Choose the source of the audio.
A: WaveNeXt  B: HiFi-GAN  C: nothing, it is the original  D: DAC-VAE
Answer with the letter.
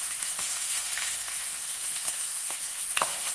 D